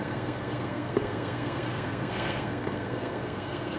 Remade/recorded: remade